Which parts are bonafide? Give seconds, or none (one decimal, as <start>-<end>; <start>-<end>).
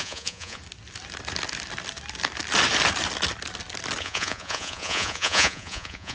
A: 0.6-4.0